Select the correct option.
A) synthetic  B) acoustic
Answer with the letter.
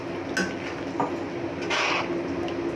B